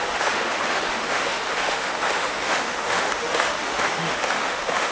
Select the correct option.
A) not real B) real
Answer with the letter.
A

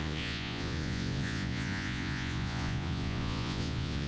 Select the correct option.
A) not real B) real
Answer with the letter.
A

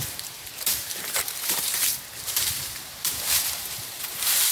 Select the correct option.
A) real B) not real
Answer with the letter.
B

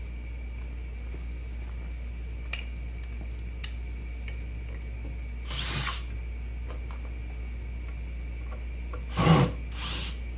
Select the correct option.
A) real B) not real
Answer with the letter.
A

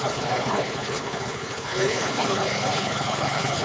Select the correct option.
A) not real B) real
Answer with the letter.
A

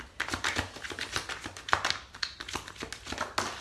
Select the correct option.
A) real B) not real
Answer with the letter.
A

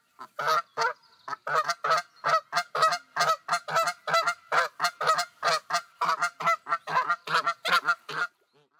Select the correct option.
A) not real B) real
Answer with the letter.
B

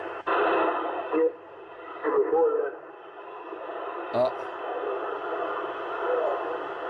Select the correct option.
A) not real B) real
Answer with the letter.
B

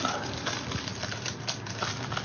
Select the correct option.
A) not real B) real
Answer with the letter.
B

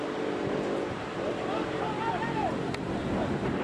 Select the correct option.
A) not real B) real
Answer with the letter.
A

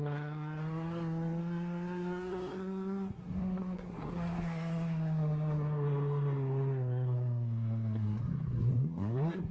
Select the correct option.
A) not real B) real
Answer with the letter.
A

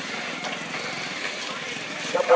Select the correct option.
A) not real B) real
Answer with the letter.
B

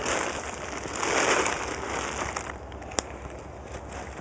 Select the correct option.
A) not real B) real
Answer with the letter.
B